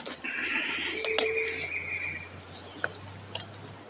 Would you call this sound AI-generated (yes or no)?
no